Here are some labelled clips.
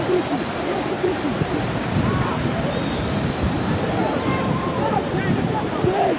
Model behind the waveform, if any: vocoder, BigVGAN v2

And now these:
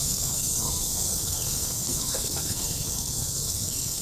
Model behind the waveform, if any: codec, SNAC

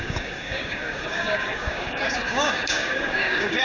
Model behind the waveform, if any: codec, DAC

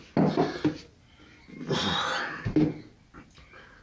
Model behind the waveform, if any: none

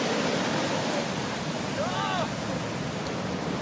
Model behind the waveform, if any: none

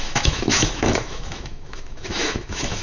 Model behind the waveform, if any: autoencoder, DAC-VAE